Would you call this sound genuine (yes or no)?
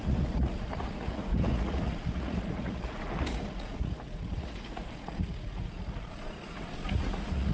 no